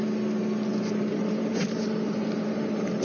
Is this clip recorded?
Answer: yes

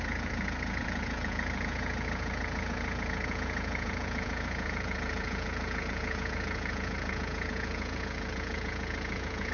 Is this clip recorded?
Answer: no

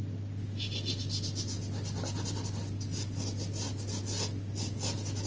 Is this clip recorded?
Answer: yes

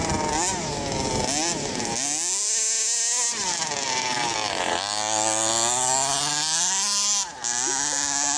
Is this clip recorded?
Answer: yes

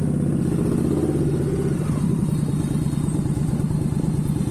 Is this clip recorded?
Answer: yes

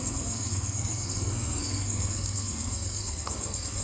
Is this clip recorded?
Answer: no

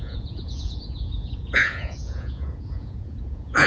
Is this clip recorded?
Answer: no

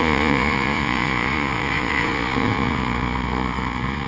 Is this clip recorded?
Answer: no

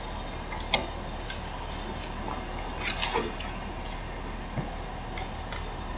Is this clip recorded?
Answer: yes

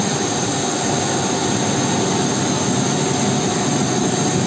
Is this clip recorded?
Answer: yes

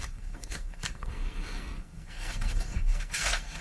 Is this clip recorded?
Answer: no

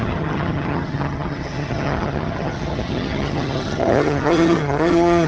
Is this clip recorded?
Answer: no